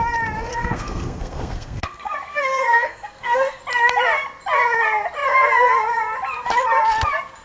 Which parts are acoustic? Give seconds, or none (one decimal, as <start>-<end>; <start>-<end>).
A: 0.0-0.5; 3.6-7.4